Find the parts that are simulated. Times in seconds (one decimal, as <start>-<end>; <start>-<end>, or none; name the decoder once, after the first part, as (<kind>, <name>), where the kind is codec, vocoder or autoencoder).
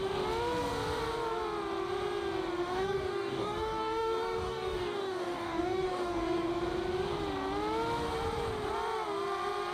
2.7-6.5 (codec, DAC)